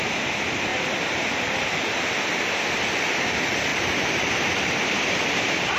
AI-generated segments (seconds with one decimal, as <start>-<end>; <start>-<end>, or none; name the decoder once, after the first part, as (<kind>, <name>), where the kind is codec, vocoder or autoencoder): 3.7-5.8 (vocoder, BigVGAN v2)